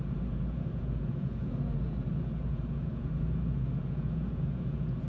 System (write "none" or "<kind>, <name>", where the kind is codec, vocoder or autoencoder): vocoder, Vocos